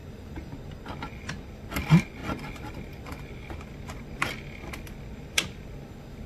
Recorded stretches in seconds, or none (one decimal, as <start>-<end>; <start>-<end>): 0.5-6.3

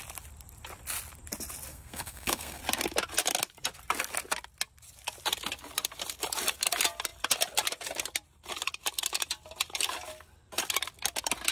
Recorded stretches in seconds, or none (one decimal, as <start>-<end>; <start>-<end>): 0.0-1.7; 2.6-11.5

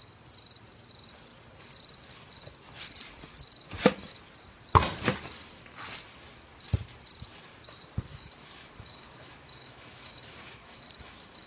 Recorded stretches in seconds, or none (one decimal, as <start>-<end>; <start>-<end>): 0.0-8.1

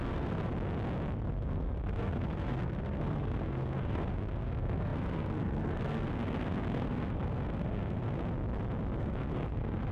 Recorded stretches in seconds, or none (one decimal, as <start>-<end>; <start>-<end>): 0.5-1.3; 8.2-9.0